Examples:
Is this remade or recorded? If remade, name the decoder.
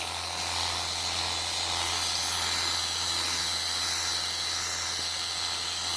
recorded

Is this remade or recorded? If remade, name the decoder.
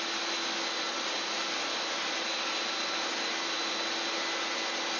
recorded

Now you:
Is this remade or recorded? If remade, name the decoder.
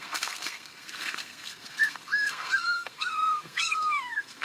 remade, codec, SNAC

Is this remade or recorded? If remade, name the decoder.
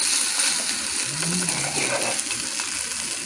recorded